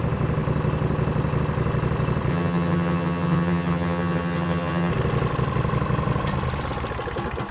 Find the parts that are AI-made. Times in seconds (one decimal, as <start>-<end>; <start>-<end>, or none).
2.3-4.9